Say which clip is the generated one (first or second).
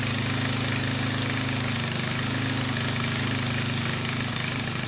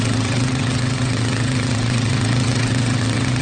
second